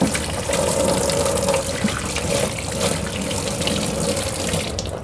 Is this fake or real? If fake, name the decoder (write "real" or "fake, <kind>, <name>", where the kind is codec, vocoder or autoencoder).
real